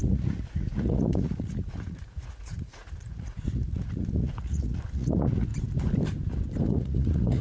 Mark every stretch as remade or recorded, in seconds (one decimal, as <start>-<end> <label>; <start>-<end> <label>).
0.0-5.5 remade; 5.5-6.6 recorded; 6.6-7.4 remade